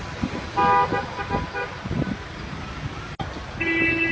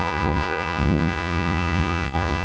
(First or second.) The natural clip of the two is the first